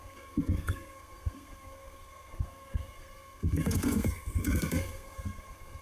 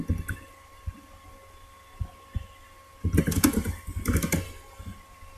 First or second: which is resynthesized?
first